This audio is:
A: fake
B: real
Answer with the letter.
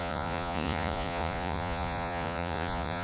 A